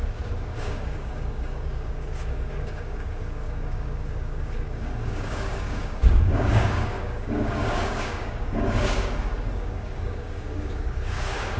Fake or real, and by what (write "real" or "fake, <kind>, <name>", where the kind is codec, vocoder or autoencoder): fake, codec, DAC